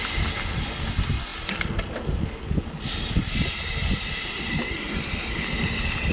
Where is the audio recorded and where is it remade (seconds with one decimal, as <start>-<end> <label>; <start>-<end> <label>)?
0.0-6.1 recorded